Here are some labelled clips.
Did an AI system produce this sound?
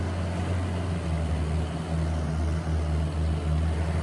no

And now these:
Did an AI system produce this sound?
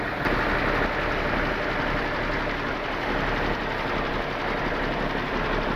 no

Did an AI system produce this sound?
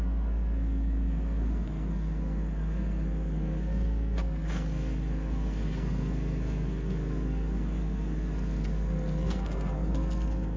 yes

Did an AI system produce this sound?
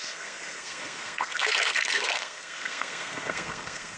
yes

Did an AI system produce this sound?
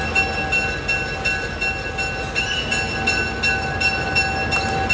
no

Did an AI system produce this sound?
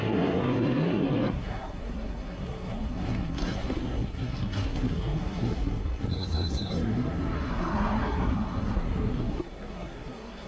yes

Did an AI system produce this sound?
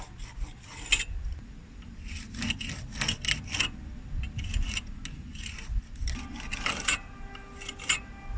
no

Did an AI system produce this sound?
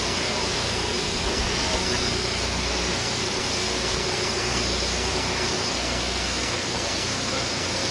yes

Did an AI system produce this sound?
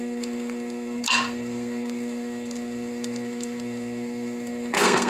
yes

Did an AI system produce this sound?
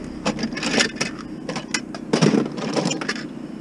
no